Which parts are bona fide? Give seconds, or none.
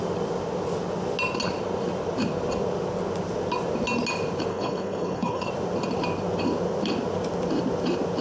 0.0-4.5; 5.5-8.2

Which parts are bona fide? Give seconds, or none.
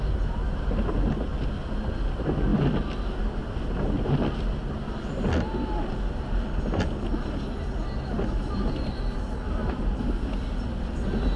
0.0-11.4